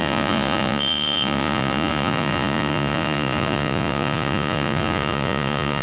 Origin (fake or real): fake